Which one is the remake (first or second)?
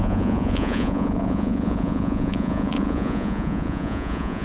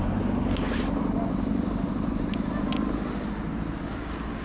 first